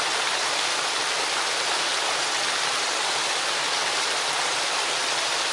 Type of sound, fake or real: real